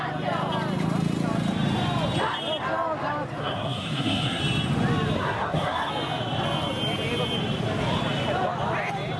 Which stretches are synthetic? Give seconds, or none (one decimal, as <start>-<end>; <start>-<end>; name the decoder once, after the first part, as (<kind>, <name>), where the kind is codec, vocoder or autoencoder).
3.4-4.4 (codec, SNAC); 5.2-5.9